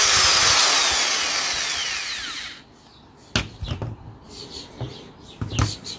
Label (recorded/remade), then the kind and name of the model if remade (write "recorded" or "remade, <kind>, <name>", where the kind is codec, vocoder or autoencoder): recorded